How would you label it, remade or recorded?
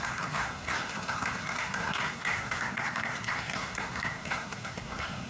remade